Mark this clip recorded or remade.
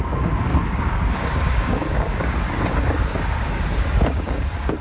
remade